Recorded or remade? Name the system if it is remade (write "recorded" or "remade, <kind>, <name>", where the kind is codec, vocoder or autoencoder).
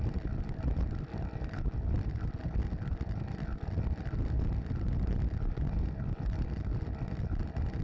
recorded